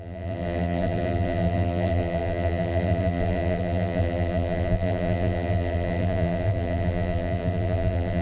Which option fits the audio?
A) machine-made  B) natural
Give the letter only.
A